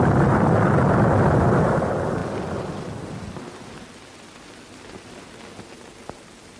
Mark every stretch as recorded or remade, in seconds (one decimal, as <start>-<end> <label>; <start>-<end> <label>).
0.0-6.6 recorded